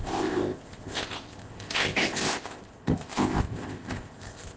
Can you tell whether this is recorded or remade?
remade